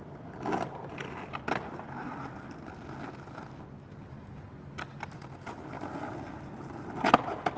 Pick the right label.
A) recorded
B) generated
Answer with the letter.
A